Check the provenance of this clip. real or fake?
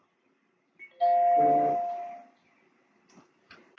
real